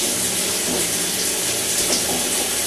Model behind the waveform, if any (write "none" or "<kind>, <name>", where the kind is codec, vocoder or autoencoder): none